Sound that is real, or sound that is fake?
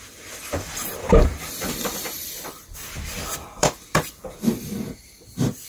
fake